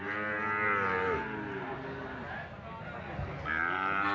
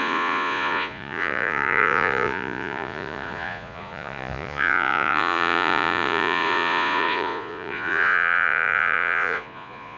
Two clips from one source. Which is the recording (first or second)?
first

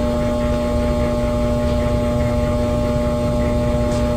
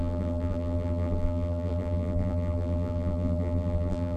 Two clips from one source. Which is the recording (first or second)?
first